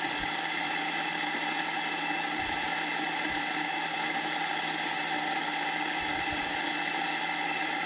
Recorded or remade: recorded